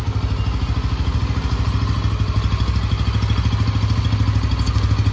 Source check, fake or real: real